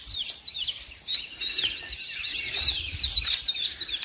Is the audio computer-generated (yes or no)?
yes